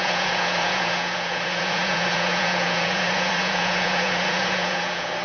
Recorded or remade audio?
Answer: remade